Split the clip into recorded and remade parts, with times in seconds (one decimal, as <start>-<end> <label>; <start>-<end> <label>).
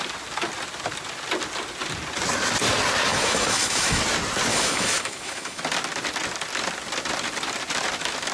0.0-3.1 recorded; 3.1-4.0 remade; 4.0-4.5 recorded; 4.5-5.6 remade; 5.6-8.3 recorded